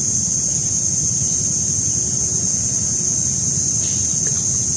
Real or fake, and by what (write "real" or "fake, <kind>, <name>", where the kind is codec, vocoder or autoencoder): real